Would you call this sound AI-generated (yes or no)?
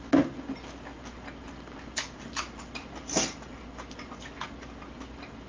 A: no